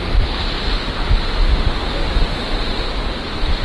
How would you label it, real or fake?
real